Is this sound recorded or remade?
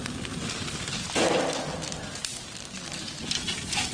recorded